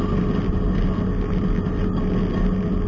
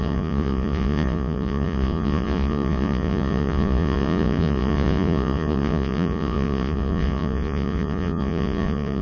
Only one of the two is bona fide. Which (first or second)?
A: first